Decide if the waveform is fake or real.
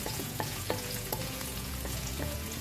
fake